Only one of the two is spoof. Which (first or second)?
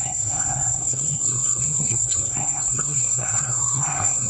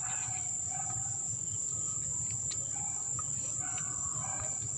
first